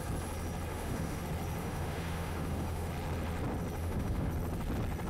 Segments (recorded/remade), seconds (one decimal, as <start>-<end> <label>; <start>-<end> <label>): 0.0-0.7 recorded; 0.7-1.2 remade; 1.2-1.6 recorded; 1.6-2.9 remade; 2.9-3.8 recorded; 3.8-4.3 remade; 4.3-5.1 recorded